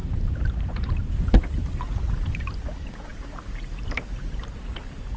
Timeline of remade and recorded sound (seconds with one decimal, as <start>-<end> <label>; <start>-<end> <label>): 0.0-1.4 remade; 1.4-3.1 recorded; 3.1-4.7 remade; 4.7-5.2 recorded